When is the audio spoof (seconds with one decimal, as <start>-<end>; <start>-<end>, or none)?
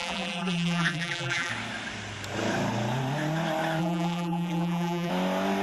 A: 0.0-1.5; 3.8-5.1